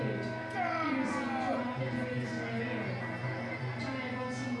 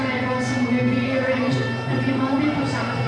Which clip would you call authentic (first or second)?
first